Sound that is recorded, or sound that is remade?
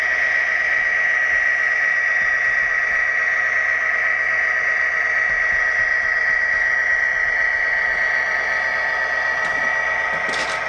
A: recorded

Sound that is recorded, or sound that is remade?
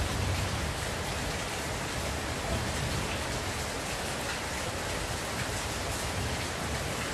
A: recorded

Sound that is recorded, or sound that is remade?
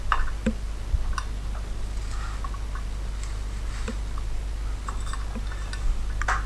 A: recorded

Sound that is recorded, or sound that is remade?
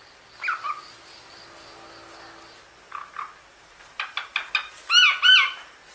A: recorded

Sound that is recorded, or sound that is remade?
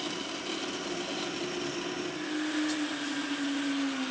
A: recorded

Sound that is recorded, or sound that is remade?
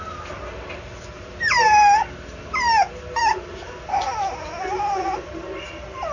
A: recorded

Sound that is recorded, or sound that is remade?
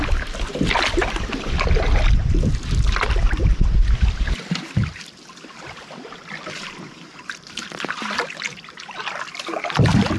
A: remade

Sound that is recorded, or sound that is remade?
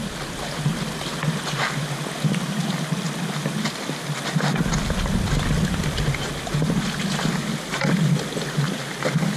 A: recorded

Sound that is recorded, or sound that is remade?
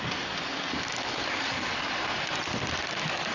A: recorded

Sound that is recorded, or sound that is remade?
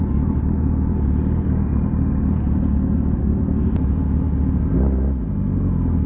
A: recorded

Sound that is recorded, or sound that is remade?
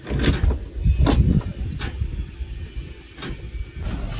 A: recorded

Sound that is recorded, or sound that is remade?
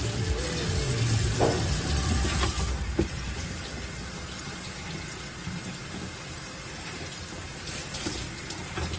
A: recorded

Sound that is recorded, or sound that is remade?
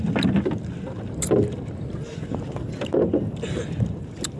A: recorded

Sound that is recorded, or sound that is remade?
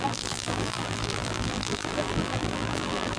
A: remade